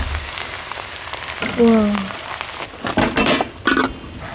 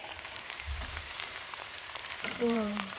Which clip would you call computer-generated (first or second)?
second